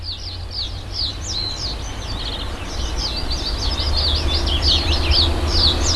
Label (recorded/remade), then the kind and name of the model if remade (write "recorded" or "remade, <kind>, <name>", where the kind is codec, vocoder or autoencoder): recorded